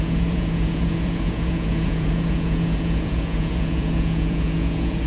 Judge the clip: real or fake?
fake